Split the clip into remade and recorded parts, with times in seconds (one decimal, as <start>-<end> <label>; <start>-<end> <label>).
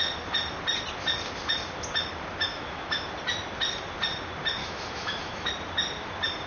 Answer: 0.0-2.5 recorded; 2.5-3.1 remade; 3.1-4.6 recorded; 4.6-5.5 remade; 5.5-6.5 recorded